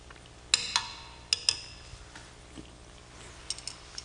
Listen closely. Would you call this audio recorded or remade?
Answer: recorded